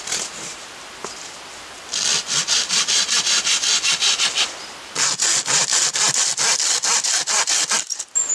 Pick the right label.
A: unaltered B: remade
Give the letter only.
A